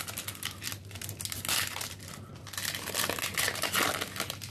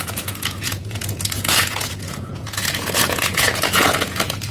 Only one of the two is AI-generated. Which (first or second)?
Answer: second